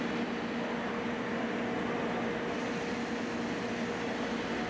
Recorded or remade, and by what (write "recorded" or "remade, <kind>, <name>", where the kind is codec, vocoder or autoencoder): recorded